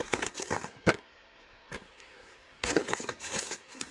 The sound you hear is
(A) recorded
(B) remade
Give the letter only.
B